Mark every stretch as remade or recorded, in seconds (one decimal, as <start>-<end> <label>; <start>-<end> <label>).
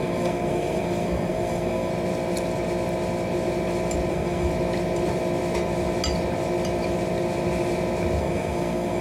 0.0-1.9 remade; 1.9-4.1 recorded; 4.1-4.5 remade; 4.5-8.2 recorded; 8.2-9.0 remade